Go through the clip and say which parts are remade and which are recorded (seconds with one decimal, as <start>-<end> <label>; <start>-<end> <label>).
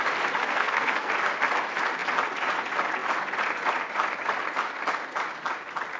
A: 0.0-0.4 recorded; 0.4-1.1 remade; 1.1-6.0 recorded